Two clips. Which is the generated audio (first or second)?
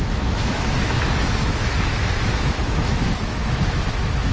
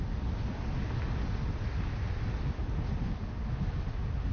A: first